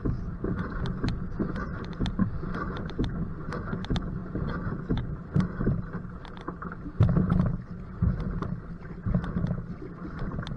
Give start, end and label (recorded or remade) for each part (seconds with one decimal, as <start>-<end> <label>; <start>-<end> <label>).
0.0-10.6 recorded